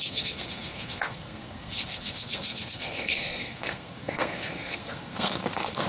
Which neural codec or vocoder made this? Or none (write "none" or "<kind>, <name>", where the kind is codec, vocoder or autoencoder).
codec, SNAC